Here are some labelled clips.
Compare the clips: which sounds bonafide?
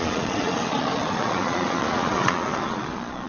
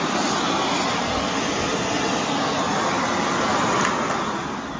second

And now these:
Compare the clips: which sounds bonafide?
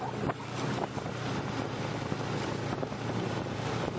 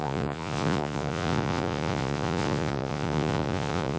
first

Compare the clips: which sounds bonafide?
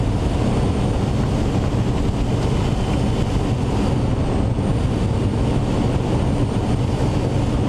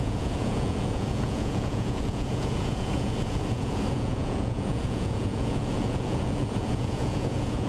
first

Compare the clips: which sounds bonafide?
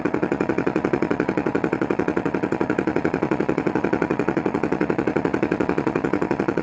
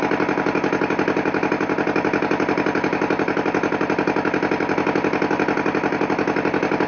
second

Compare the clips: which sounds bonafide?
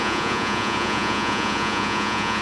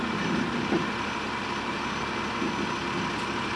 second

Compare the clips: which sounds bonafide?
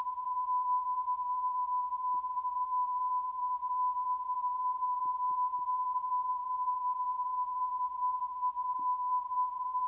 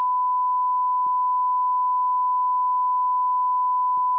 second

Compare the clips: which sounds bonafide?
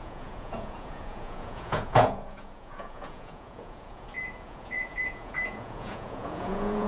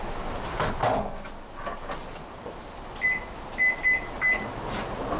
second